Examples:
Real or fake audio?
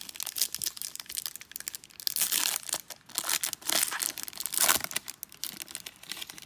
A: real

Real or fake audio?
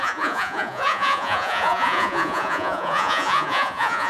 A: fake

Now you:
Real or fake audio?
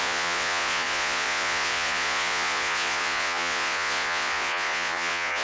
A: fake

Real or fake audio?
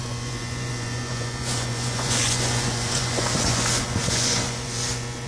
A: fake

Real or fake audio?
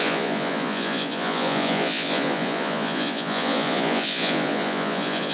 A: fake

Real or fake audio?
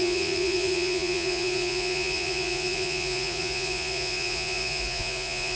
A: fake